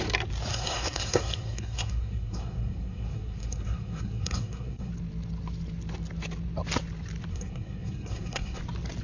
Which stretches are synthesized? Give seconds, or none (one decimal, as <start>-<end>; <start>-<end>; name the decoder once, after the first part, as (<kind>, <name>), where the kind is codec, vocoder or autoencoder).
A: 0.5-4.9 (codec, SNAC); 7.3-8.6